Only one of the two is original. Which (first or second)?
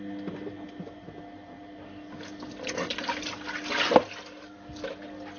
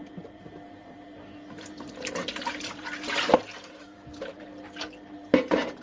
first